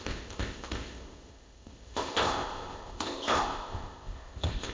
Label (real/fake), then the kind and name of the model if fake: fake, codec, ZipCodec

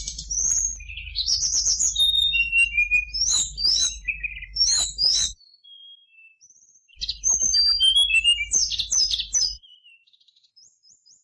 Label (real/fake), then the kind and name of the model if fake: fake, vocoder, BigVGAN v2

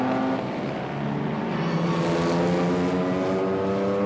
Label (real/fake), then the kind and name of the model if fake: real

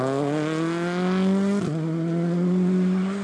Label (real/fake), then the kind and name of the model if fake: real